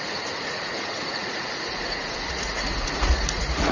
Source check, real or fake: fake